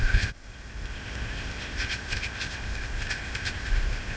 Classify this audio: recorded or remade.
remade